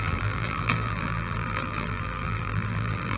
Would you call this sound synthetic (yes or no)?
yes